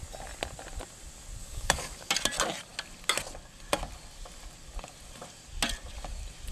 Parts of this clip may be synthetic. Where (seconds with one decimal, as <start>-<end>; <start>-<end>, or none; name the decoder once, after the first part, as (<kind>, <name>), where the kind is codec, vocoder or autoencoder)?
1.4-2.1 (codec, DAC)